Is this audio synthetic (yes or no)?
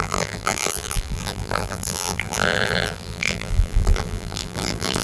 yes